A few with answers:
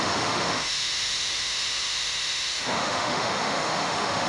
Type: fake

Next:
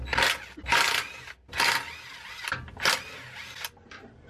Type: real